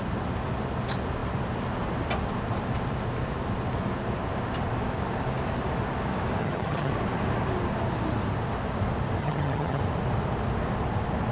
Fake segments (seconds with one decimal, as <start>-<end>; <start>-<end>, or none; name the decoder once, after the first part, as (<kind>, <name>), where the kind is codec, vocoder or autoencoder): 6.4-6.9 (vocoder, HiFi-GAN); 9.2-9.8